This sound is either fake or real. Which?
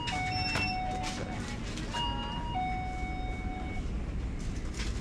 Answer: real